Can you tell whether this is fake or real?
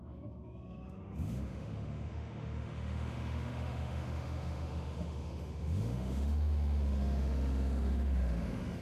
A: fake